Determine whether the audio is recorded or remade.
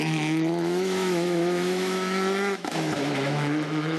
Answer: remade